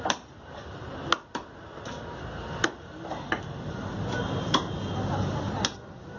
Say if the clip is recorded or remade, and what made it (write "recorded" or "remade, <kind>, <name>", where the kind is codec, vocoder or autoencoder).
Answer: recorded